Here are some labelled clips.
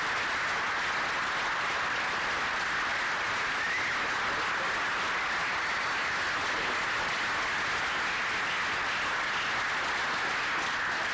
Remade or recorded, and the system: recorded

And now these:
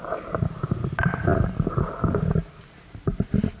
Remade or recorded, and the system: recorded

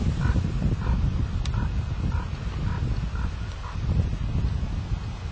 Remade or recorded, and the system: recorded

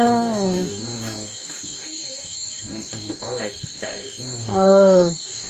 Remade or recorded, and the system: remade, codec, DAC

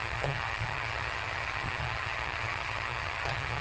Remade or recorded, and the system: remade, vocoder, HiFi-GAN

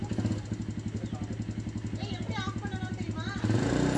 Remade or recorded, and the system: recorded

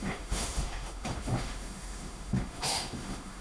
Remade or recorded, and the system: remade, autoencoder, DAC-VAE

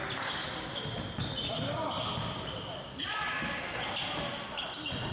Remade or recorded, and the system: recorded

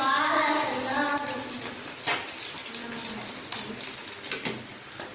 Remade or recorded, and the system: recorded